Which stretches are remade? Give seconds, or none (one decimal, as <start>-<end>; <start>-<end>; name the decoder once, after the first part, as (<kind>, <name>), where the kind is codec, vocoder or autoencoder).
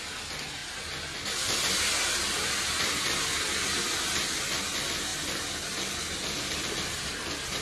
none